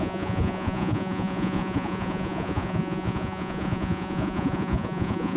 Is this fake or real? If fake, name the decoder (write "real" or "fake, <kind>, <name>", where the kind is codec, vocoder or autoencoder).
fake, vocoder, Vocos